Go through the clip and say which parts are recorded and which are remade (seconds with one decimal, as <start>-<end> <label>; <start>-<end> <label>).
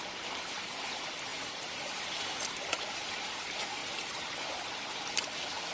0.0-1.3 recorded; 1.3-2.5 remade; 2.5-3.8 recorded; 3.8-5.3 remade; 5.3-5.7 recorded